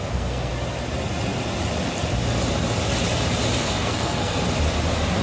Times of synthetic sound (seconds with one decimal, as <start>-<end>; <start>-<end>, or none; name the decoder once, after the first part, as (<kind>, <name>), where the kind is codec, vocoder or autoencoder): 0.0-0.5 (codec, SNAC); 3.6-4.4